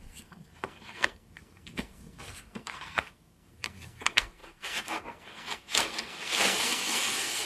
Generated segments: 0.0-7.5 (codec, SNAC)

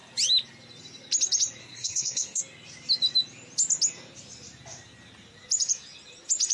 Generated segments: 1.6-2.4 (codec, SNAC)

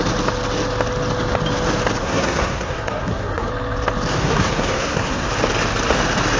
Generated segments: 2.0-3.5 (codec, SNAC); 4.2-5.3